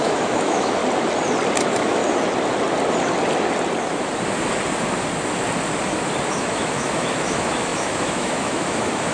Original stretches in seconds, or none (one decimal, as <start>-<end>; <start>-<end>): 0.8-1.6; 2.0-6.3